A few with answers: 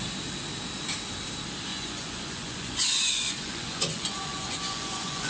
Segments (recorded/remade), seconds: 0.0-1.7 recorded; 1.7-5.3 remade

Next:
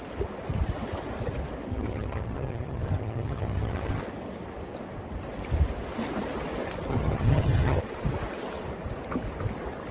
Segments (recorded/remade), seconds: 0.0-1.7 recorded; 1.7-4.0 remade; 4.0-6.9 recorded; 6.9-7.8 remade; 7.8-9.9 recorded

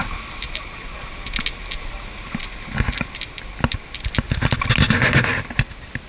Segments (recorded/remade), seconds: 0.0-6.1 recorded